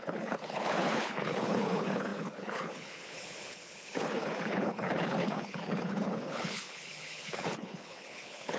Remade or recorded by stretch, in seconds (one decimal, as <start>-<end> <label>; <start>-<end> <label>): 0.0-8.6 remade